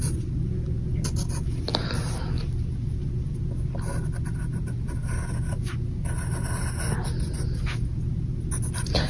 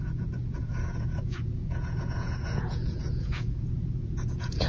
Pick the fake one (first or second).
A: second